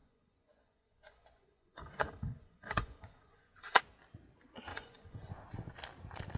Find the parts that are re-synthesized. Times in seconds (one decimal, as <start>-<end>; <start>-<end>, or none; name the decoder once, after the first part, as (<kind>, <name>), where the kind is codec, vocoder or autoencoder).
0.0-3.8 (vocoder, Vocos); 4.7-5.3